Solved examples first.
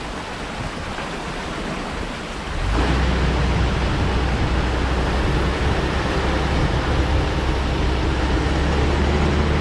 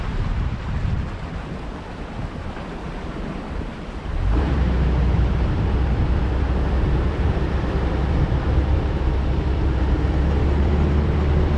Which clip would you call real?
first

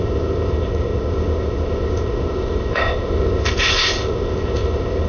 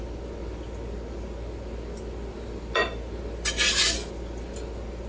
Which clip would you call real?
second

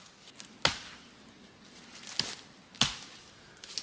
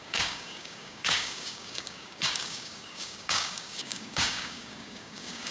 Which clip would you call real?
first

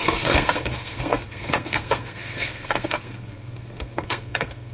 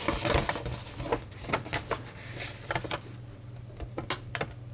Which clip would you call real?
second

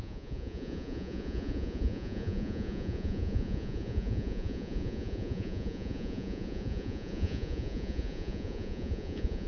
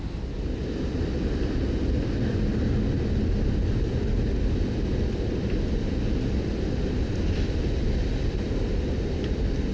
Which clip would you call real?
second